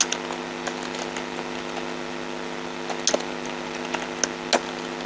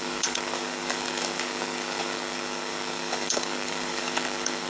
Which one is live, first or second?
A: first